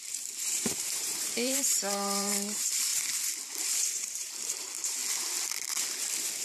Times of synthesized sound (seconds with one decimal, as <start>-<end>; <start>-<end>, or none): 0.0-2.9; 3.8-5.0